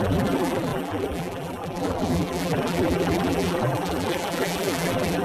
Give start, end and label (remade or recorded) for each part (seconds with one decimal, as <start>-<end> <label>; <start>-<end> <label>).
0.0-5.2 remade